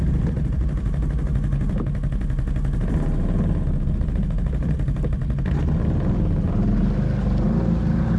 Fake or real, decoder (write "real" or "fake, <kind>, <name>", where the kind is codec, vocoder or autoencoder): real